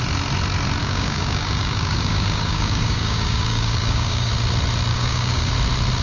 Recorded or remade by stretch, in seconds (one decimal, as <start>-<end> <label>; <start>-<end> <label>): 0.0-0.8 recorded; 0.8-4.3 remade; 4.3-4.9 recorded; 4.9-5.5 remade; 5.5-6.0 recorded